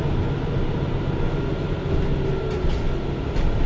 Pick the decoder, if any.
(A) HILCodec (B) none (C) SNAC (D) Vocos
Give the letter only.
B